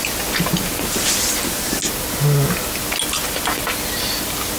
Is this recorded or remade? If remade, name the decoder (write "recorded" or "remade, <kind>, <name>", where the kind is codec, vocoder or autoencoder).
recorded